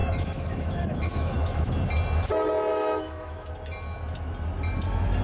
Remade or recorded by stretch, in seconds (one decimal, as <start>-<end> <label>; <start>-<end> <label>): 0.0-1.8 remade; 1.8-2.7 recorded; 2.7-3.5 remade; 3.5-5.2 recorded